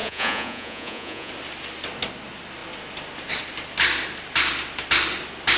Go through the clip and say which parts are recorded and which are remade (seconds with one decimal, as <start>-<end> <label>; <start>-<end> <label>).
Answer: 0.0-1.3 remade; 1.3-5.6 recorded